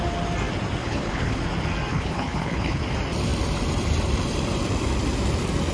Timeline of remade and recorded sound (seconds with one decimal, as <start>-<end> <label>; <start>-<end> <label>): 0.0-0.8 recorded; 0.8-1.4 remade; 1.4-1.9 recorded; 1.9-2.8 remade; 2.8-5.7 recorded